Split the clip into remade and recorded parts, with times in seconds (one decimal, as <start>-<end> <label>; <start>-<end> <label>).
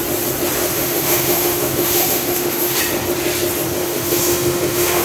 0.0-0.6 recorded; 0.6-2.8 remade; 2.8-3.8 recorded; 3.8-5.0 remade